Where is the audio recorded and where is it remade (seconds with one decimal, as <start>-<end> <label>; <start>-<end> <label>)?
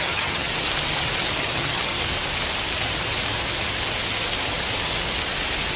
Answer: 0.0-0.5 remade; 0.5-1.4 recorded; 1.4-1.9 remade; 1.9-5.8 recorded